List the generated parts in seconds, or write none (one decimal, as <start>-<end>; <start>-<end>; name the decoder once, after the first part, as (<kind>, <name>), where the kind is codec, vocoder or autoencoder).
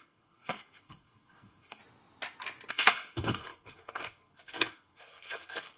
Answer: 0.0-1.8 (codec, SNAC); 2.7-5.8